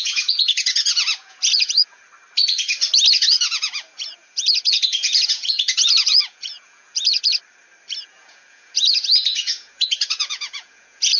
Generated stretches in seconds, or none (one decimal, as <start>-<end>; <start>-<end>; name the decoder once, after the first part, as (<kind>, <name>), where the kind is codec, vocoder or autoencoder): 0.0-2.0 (vocoder, Vocos); 3.1-7.4; 8.0-11.2